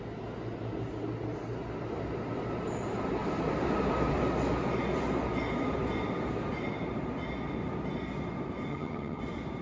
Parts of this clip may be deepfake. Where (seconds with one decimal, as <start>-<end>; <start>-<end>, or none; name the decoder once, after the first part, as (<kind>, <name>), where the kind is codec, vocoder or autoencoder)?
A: 8.7-9.2 (vocoder, HiFi-GAN)